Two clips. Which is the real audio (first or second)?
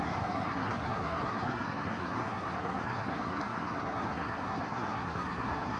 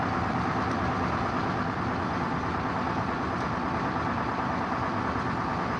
second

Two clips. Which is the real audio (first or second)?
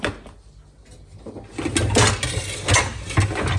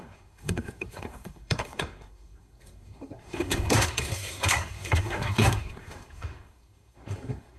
first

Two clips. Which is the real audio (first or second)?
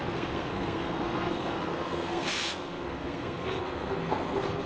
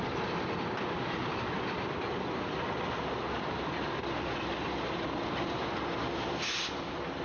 second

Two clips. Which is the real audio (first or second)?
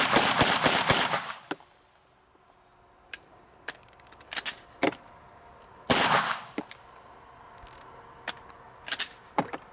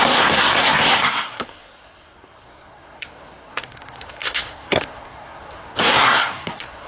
first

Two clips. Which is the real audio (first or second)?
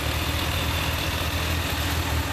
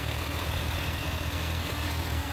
first